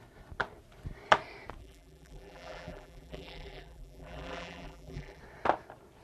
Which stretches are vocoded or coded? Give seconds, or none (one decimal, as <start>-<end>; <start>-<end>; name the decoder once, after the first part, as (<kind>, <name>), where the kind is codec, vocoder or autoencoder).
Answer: 1.6-5.2 (vocoder, BigVGAN v2)